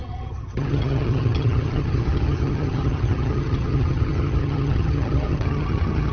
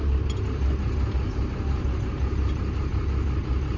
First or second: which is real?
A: second